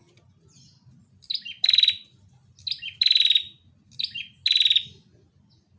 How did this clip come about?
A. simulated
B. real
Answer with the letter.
B